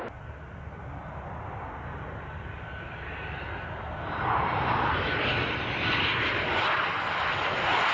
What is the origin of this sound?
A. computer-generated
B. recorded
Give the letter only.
B